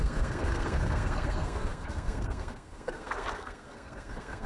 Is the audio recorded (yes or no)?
no